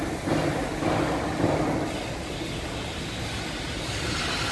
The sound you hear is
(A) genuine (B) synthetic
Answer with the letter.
A